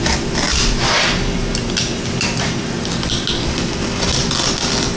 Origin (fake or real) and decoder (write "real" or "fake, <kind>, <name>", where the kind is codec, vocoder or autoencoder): real